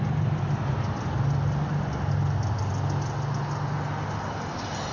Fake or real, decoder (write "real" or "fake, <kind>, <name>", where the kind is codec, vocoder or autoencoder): real